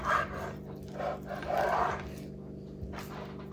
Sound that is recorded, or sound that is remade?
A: recorded